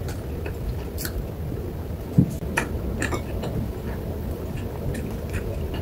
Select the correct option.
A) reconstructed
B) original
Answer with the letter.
B